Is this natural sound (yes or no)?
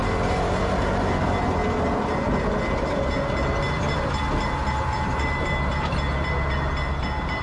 yes